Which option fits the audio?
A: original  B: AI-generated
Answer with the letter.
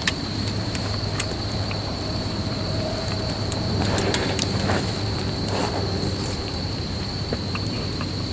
B